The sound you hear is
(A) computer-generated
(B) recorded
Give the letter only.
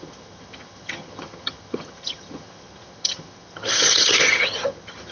A